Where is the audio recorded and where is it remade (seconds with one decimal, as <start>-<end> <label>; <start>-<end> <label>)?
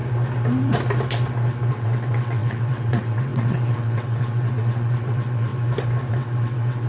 0.0-1.7 recorded; 1.7-5.5 remade; 5.5-6.1 recorded; 6.1-6.9 remade